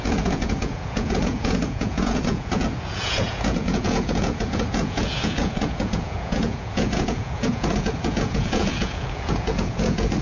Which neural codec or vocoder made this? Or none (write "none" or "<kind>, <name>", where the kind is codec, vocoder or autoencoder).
vocoder, Vocos